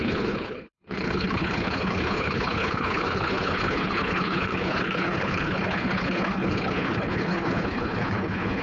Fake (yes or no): yes